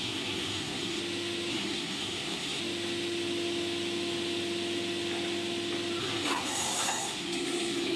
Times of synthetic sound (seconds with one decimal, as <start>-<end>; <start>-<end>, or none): 0.0-1.0; 1.5-2.6; 6.0-8.0